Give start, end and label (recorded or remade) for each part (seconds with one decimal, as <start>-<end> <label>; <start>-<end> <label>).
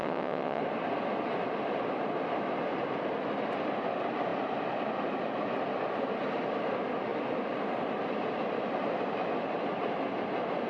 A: 0.0-0.6 remade; 0.6-10.7 recorded